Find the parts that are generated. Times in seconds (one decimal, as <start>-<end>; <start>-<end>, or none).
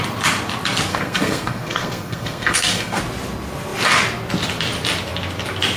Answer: 0.9-3.0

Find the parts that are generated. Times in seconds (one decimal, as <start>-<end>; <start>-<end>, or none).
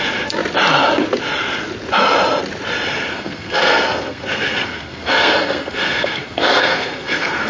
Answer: 3.1-7.5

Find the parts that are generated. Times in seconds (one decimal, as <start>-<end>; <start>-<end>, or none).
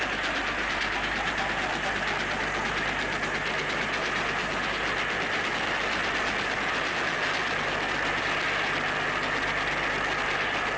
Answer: none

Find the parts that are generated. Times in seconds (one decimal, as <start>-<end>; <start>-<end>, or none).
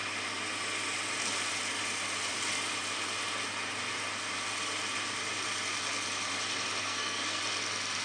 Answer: 6.8-7.4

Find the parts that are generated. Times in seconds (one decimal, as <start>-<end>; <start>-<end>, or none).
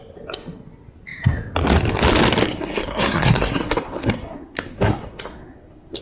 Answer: 2.4-6.0